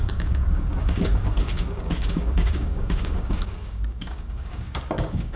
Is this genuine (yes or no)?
no